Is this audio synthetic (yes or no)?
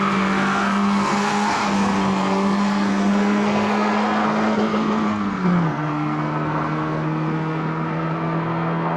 yes